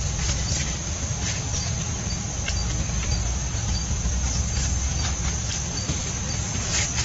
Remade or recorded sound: remade